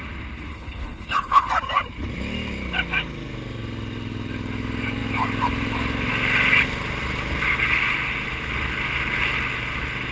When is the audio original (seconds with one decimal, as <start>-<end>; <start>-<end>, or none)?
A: 0.0-0.5; 1.5-10.1